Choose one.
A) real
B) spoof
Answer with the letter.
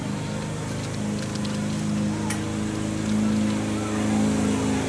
A